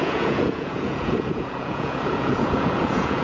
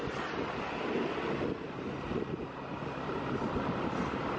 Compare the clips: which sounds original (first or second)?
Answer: second